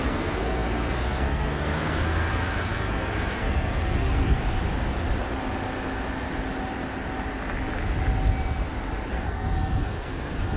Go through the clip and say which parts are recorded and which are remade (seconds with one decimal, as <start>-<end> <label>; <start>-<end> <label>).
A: 0.0-4.4 remade; 4.4-9.1 recorded; 9.1-10.6 remade